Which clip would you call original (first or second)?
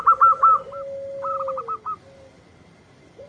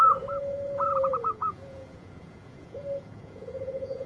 first